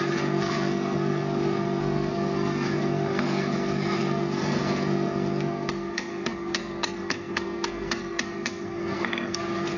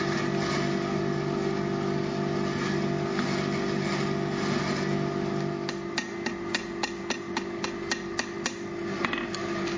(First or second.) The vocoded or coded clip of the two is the first